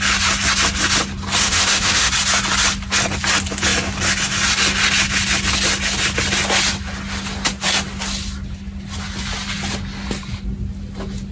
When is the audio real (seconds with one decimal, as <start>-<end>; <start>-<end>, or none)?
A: 0.0-1.4; 2.1-11.3

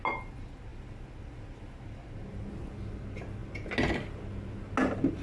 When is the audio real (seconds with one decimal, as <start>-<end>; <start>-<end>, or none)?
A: 0.0-5.2